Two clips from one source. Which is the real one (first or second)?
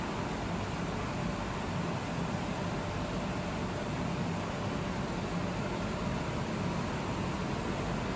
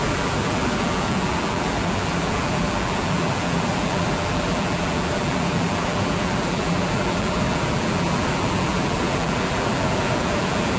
first